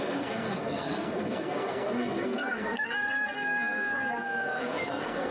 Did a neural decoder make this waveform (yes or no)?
yes